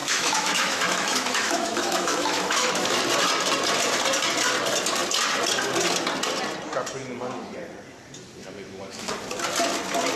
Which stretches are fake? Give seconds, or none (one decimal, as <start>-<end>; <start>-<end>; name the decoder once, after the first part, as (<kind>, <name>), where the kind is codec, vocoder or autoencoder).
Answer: 0.0-3.0 (autoencoder, DAC-VAE); 8.4-9.1